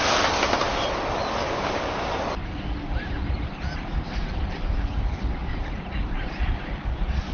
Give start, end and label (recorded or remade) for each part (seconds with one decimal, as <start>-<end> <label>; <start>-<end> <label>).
0.0-1.4 recorded; 1.4-2.1 remade; 2.1-7.3 recorded